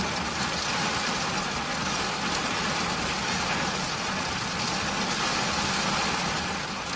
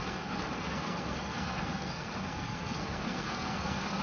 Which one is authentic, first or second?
first